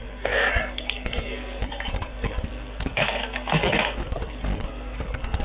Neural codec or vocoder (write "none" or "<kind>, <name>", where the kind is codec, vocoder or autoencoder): codec, SNAC